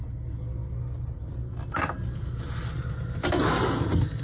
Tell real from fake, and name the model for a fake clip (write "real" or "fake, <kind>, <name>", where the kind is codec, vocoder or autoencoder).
real